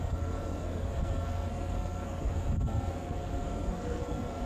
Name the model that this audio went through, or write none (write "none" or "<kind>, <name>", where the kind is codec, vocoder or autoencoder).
codec, SNAC